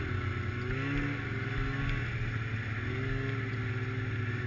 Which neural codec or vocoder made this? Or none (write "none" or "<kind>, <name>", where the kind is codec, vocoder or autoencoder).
none